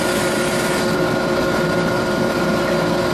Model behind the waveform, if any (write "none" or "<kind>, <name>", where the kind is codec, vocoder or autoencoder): none